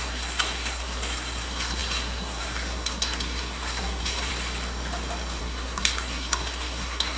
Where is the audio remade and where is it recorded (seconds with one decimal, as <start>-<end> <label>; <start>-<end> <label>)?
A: 0.0-4.3 remade; 4.3-5.4 recorded; 5.4-7.2 remade